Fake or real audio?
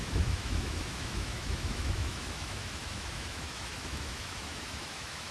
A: fake